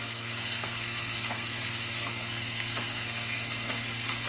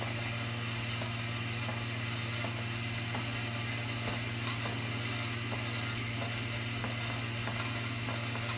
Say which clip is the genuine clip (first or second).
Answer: second